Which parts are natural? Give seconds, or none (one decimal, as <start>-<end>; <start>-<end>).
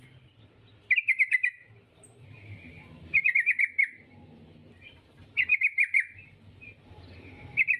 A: 0.0-1.1; 3.5-4.6